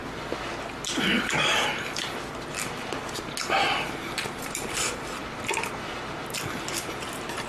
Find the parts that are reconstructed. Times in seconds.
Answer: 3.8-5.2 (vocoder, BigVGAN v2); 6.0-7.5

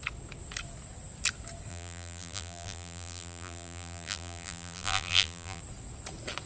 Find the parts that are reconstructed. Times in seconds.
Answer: 1.7-5.6 (vocoder, BigVGAN v2)

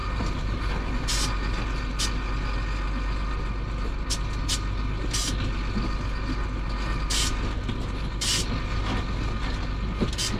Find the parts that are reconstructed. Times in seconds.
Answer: 0.0-0.7 (vocoder, BigVGAN v2)

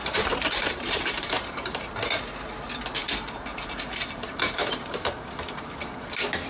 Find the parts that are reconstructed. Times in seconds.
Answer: 0.0-1.9 (vocoder, BigVGAN v2); 3.0-5.1

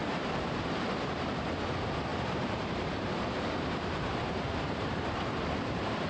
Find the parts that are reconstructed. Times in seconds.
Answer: 0.0-1.6 (vocoder, BigVGAN v2); 2.1-6.1

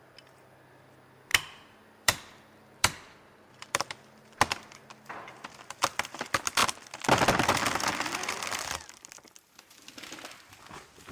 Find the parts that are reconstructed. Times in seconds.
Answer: 1.3-4.9 (vocoder, BigVGAN v2)

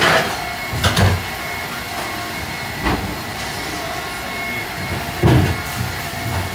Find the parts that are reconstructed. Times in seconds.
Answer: none

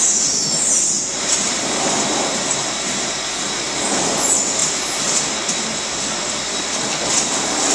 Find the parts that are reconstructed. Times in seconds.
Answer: 0.4-3.2 (vocoder, BigVGAN v2); 4.6-5.2